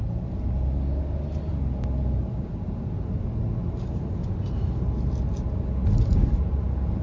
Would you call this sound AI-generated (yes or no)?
no